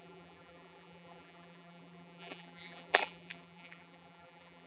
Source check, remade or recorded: remade